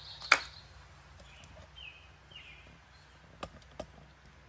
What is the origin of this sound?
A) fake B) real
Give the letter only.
B